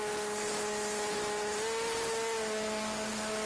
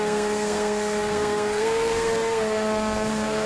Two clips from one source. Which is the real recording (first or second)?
first